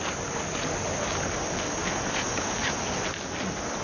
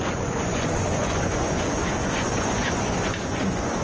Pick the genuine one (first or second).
first